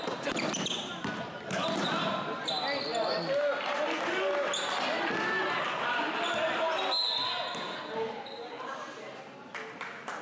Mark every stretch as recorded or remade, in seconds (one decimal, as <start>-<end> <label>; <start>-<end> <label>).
0.0-10.2 recorded